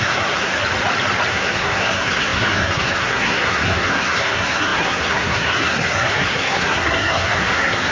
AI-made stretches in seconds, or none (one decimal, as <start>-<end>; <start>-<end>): 0.0-0.5; 1.3-7.9

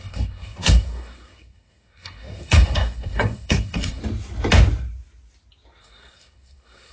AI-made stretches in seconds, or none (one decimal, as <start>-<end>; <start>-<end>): 0.0-4.0; 5.8-6.9

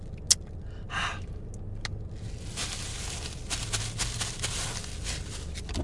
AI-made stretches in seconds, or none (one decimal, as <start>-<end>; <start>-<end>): none

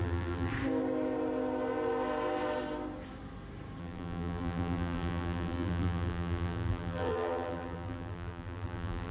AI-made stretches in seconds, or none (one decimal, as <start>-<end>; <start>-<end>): 0.0-0.5; 3.8-9.1

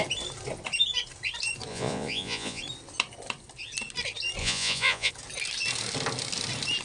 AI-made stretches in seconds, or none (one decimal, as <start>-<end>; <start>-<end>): 1.7-2.6; 4.4-5.1

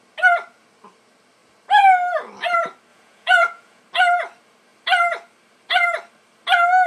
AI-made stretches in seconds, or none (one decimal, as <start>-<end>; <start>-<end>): 2.9-3.8